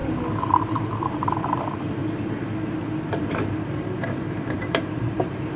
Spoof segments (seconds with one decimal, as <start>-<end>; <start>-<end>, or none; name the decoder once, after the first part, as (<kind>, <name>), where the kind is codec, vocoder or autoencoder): 0.5-2.0 (vocoder, BigVGAN v2); 3.1-5.6